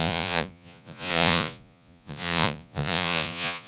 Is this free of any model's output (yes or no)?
no